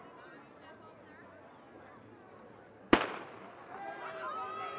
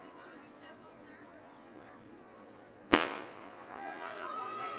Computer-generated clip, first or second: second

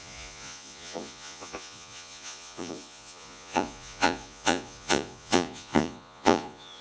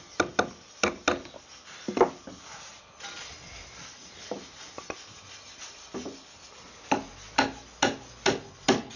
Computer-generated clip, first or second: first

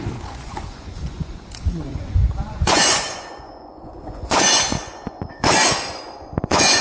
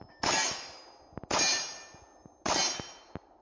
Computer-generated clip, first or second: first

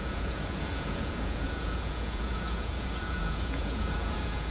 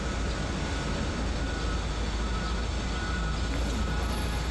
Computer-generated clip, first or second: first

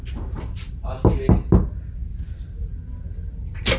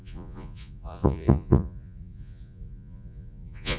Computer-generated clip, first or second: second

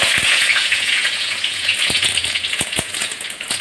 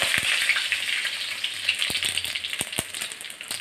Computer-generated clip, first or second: first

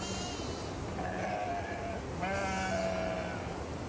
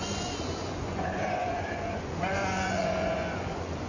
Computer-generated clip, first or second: second